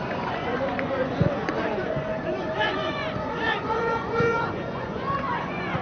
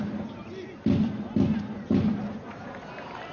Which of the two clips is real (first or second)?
second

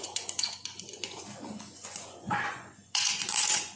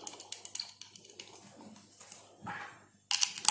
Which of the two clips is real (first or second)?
second